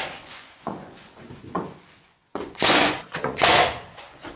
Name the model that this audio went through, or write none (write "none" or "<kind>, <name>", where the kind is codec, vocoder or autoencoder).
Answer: vocoder, Vocos